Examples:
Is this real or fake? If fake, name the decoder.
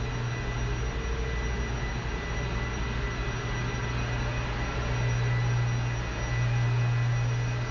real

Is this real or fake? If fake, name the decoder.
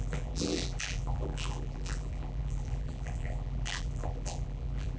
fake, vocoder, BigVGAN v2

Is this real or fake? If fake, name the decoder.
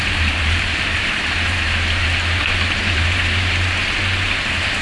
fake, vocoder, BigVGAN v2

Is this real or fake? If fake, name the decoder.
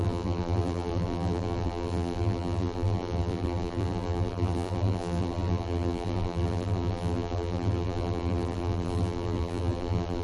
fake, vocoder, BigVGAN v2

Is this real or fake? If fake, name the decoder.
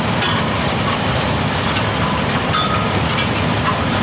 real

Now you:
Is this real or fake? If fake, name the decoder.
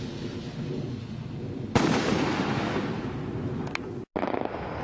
real